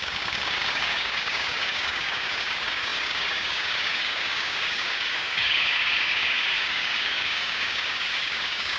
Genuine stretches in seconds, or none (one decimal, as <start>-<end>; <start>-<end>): none